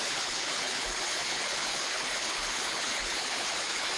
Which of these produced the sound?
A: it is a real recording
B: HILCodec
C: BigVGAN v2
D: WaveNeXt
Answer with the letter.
B